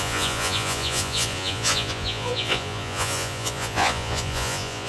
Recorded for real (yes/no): no